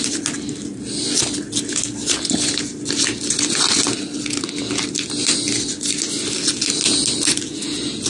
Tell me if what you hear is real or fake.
real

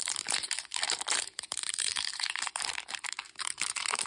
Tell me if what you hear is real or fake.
fake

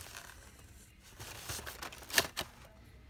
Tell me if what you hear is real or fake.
real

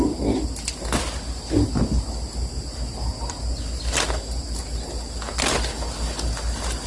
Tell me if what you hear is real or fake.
real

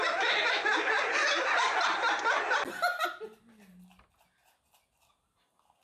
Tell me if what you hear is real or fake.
real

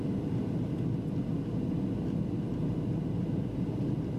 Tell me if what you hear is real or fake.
real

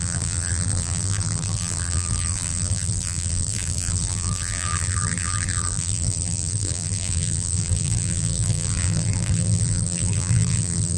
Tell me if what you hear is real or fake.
fake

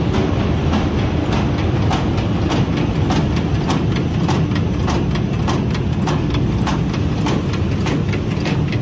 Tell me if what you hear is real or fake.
real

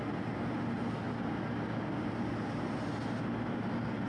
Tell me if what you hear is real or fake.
real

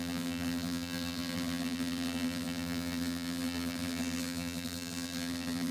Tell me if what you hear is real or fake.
fake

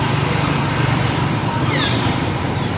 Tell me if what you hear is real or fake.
fake